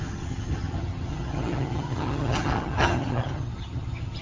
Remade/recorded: remade